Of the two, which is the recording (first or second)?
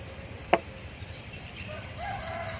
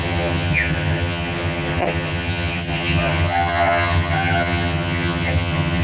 first